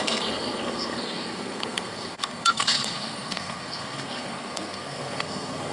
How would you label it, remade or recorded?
remade